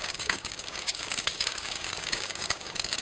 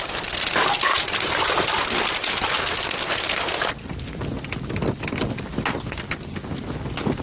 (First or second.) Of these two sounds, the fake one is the first